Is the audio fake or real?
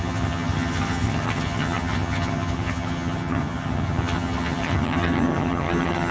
fake